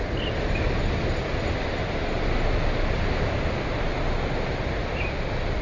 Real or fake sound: real